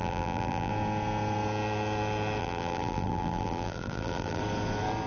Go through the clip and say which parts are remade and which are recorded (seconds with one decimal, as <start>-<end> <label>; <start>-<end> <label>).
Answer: 0.0-0.7 remade; 0.7-2.4 recorded; 2.4-4.4 remade; 4.4-5.1 recorded